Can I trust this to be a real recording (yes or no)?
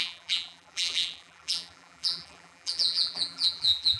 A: no